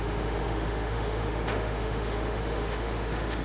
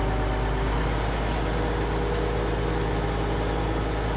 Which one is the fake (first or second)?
first